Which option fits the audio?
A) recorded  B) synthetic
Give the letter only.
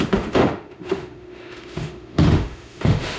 B